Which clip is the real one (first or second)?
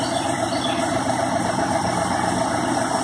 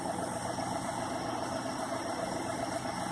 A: second